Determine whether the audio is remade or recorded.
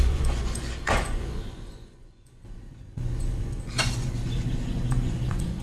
remade